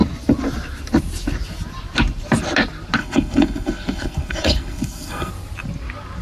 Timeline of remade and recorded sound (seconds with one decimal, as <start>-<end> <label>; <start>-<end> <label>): 0.0-3.0 recorded; 3.0-5.3 remade; 5.3-6.2 recorded